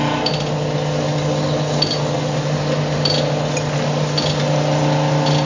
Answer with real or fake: real